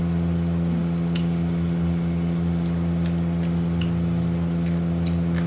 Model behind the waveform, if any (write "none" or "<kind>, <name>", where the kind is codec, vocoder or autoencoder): none